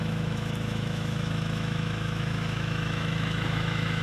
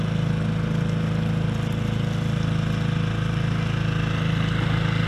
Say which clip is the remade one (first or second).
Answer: first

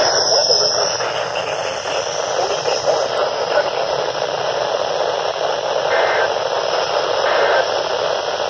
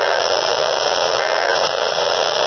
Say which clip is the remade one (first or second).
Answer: second